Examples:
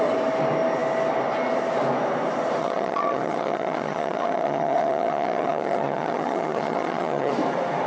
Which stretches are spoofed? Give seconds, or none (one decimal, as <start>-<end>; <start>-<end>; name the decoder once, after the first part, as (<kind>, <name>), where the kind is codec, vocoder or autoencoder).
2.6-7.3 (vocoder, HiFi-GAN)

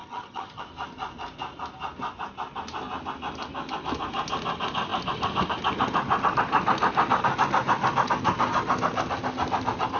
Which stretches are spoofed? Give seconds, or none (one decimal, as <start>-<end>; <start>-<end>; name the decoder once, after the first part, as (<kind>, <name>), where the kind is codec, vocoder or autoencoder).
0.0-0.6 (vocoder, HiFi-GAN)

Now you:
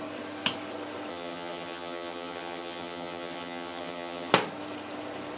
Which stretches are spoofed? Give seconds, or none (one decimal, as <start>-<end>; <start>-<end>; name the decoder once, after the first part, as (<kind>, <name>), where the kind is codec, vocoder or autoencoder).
1.1-4.3 (vocoder, HiFi-GAN)

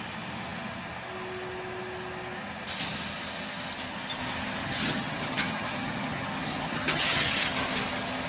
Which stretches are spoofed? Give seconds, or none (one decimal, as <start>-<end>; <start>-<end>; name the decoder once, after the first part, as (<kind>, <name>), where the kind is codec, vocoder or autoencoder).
4.6-7.5 (vocoder, HiFi-GAN)